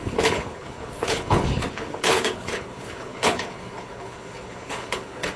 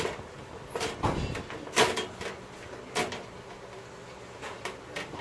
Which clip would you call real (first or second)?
second